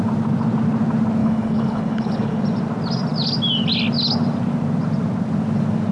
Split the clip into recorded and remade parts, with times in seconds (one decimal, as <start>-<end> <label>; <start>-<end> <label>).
0.0-1.2 recorded; 1.2-2.4 remade; 2.4-5.9 recorded